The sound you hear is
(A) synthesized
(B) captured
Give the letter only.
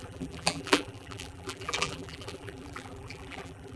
A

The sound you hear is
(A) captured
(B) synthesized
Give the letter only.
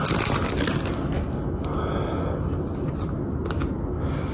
A